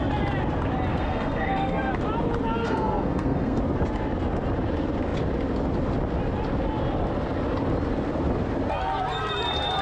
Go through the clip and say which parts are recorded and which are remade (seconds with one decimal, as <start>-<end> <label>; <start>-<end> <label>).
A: 0.0-0.9 recorded; 0.9-1.9 remade; 1.9-2.6 recorded; 2.6-3.6 remade; 3.6-9.8 recorded